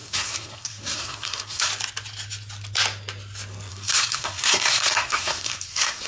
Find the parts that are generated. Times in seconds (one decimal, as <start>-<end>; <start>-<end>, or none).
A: 0.0-1.7; 3.7-6.1